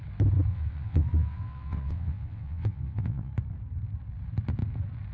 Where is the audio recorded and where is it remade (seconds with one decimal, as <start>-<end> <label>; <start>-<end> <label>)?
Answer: 0.0-0.5 recorded; 0.5-3.3 remade; 3.3-5.1 recorded